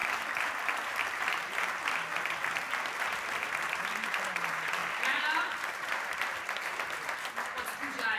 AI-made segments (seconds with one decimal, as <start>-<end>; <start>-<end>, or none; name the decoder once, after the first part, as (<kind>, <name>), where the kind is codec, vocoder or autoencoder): 0.0-3.0 (vocoder, BigVGAN v2); 4.8-6.4